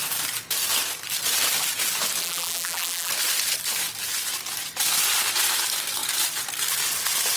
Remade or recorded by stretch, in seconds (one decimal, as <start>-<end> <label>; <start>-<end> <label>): 0.0-2.2 recorded; 2.2-3.1 remade; 3.1-7.4 recorded